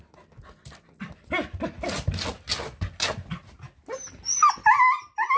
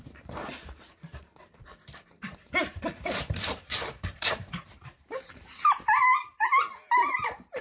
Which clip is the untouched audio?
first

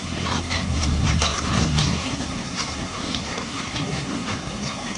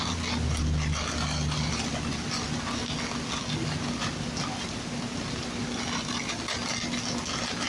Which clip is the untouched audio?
second